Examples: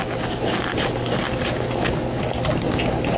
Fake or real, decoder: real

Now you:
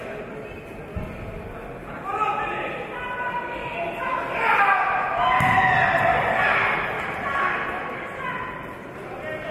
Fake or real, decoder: real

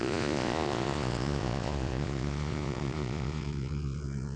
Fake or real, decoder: fake, vocoder, Vocos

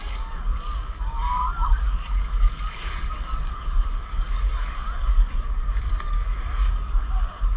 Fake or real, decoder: fake, codec, DAC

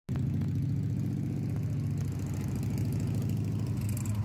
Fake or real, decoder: real